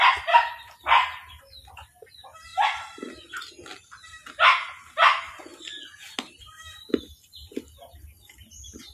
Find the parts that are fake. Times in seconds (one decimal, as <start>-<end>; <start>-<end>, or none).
none